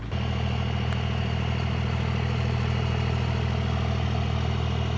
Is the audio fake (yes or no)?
no